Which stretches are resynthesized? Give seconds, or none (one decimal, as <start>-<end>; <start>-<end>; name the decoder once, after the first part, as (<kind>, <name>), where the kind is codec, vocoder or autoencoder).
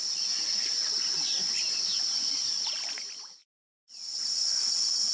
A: 3.4-5.1 (vocoder, BigVGAN v2)